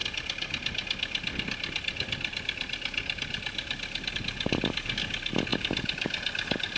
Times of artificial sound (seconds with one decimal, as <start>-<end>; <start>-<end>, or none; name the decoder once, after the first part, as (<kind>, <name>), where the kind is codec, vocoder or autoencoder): none